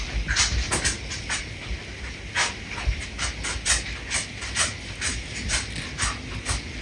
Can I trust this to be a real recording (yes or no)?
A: yes